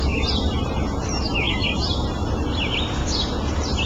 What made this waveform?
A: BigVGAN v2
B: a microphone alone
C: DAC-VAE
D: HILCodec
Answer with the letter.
B